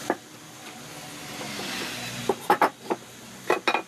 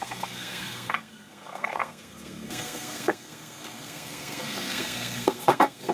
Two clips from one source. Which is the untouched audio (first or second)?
first